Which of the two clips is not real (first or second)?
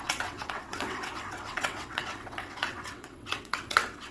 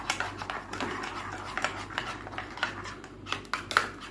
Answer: first